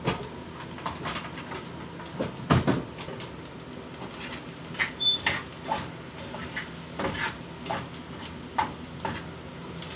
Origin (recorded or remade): recorded